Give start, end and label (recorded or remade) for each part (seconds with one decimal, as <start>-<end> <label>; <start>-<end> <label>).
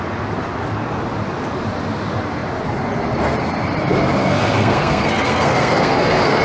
0.0-4.2 recorded; 4.2-6.4 remade